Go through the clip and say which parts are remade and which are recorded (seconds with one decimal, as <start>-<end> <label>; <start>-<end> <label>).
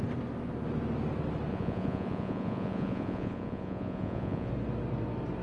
0.0-1.5 recorded; 1.5-4.5 remade; 4.5-5.4 recorded